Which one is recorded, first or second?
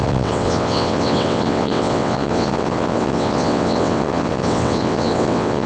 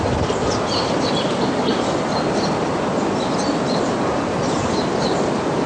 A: second